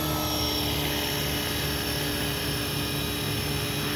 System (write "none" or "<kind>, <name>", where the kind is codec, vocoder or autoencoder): none